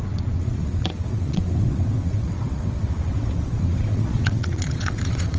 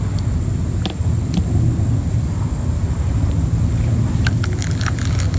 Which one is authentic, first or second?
second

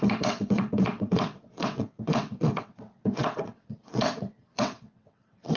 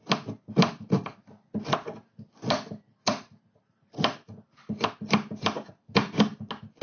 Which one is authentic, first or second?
second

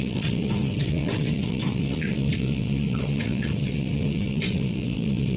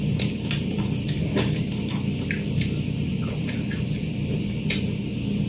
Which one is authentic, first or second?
second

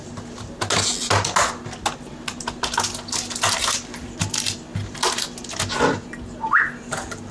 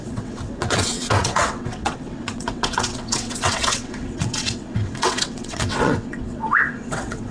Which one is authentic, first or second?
first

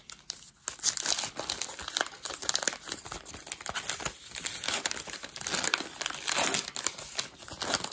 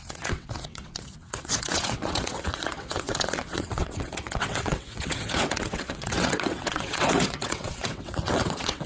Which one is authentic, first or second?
first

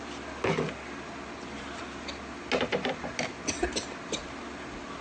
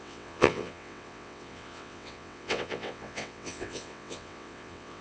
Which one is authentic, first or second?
first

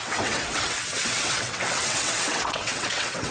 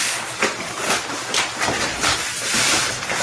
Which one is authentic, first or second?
second